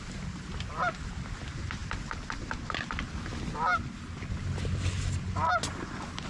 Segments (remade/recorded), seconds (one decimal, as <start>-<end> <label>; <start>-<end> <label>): 0.0-6.3 recorded